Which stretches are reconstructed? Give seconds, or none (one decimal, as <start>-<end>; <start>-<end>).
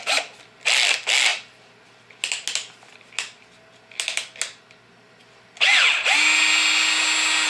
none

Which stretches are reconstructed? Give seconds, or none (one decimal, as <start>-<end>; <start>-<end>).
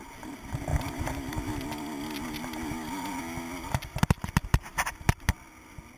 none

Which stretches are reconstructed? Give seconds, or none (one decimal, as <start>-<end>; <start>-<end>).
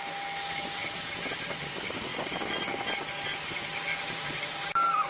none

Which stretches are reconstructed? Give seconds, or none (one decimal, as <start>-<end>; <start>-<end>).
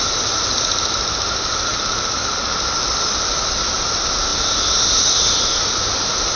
0.0-6.4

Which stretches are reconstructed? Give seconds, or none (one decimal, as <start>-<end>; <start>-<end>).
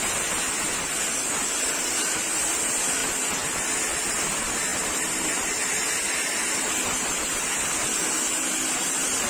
none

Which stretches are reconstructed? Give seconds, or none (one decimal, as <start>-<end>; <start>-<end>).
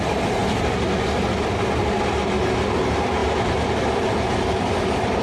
none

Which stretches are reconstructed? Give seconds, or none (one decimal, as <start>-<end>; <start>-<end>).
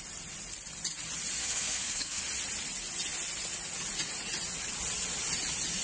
1.4-2.2